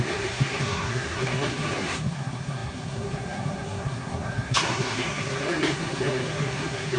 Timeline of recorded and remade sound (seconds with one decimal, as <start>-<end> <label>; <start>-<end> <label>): 0.0-7.0 remade